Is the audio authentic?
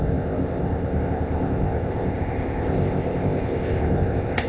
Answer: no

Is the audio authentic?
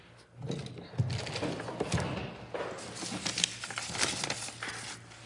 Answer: yes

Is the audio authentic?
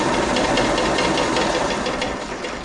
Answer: yes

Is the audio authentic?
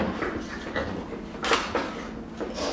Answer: yes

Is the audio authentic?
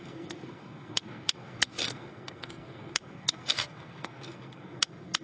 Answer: no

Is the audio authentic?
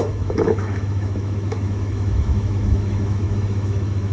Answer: no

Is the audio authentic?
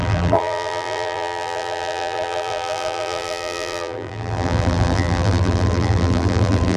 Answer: no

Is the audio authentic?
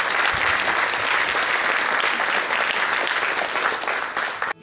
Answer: yes